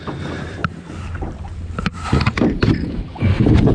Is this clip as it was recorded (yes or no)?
no